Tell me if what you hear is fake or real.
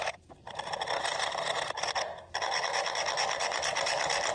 real